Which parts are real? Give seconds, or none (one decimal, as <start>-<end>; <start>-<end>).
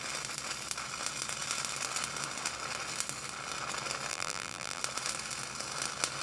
0.0-4.1; 4.8-6.2